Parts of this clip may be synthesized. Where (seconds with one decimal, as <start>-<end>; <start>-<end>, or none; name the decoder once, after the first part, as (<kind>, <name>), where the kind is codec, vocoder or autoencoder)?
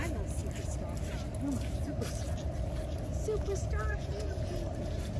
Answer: 3.9-4.4 (vocoder, Vocos)